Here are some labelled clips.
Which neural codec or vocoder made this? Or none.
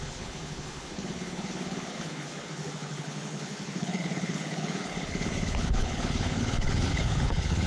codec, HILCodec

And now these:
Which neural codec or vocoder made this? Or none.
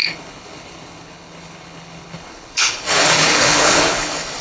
codec, HILCodec